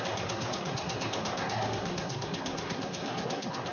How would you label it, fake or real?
fake